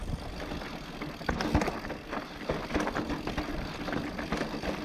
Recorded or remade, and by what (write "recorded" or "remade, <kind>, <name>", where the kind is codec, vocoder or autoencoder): recorded